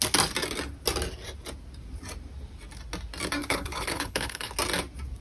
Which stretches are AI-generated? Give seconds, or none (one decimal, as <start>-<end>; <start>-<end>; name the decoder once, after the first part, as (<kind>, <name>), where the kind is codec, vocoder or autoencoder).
3.4-4.5 (codec, HILCodec)